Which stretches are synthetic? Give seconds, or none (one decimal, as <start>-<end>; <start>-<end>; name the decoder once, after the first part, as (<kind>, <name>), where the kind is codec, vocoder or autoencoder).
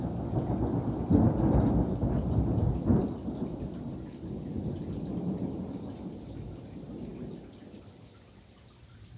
none